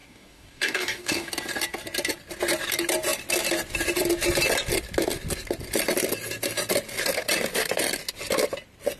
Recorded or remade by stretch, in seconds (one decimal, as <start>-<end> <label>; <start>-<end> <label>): 0.0-1.3 remade; 1.3-9.0 recorded